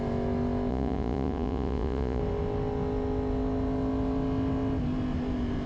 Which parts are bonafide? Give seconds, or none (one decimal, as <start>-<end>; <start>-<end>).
0.0-0.7; 2.2-5.7